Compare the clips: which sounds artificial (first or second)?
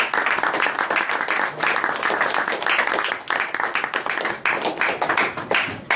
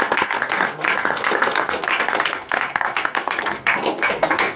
second